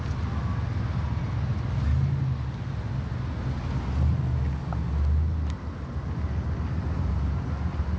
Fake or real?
real